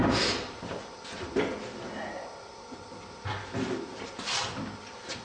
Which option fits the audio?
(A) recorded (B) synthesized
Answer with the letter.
A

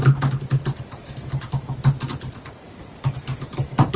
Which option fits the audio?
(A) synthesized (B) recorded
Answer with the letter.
B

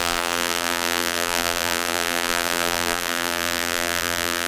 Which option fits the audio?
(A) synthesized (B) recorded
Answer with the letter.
A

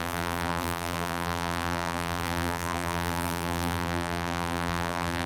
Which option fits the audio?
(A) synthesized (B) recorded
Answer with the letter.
A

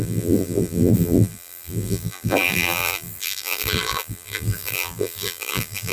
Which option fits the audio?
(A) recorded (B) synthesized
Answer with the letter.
B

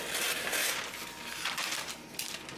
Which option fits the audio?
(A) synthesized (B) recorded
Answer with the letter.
B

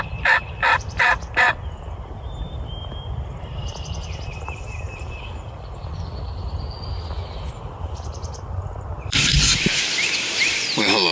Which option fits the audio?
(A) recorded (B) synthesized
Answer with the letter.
B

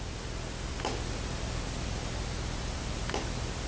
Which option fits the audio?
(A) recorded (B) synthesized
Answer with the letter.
A